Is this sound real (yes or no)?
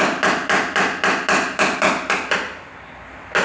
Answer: yes